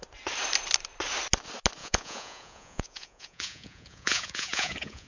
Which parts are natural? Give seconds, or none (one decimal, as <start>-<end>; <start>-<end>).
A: 0.0-1.8